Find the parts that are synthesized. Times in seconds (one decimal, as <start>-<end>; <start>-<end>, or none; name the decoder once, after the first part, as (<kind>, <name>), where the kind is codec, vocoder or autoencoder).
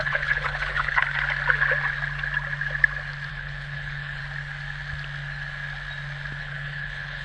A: 0.0-1.0 (codec, HILCodec); 3.3-4.2; 6.4-7.2